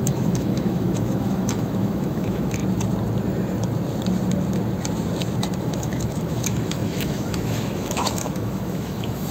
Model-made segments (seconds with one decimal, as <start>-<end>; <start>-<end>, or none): 0.0-2.6; 5.6-9.3